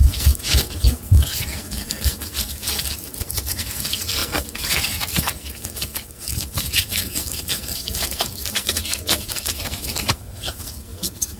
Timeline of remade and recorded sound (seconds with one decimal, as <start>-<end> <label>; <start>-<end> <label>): 0.0-11.4 remade